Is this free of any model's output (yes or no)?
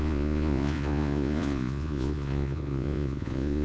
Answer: no